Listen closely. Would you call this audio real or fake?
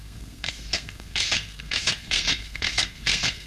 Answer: fake